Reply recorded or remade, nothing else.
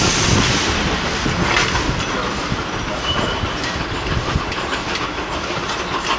recorded